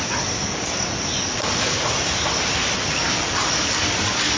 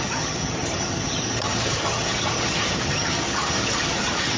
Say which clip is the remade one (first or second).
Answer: second